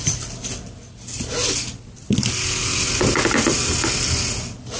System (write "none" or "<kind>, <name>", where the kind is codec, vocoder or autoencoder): none